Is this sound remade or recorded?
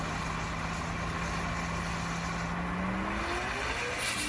recorded